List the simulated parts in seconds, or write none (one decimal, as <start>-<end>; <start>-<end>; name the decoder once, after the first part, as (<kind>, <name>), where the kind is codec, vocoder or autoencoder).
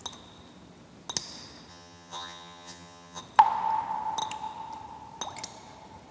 1.7-3.2 (vocoder, HiFi-GAN)